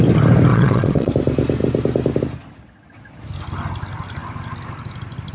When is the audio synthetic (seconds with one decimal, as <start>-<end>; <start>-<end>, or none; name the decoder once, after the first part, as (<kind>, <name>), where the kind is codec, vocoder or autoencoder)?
0.5-1.1 (vocoder, Vocos)